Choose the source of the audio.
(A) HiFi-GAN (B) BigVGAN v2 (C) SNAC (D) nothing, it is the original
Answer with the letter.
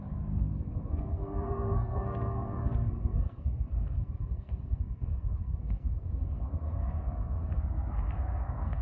C